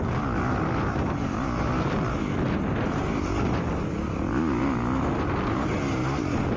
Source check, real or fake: real